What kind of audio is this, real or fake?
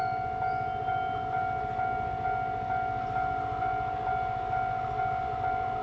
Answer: real